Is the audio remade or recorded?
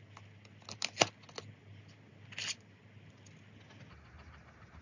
recorded